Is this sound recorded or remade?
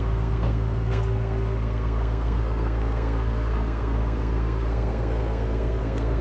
remade